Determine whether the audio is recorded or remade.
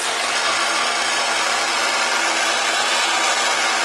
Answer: recorded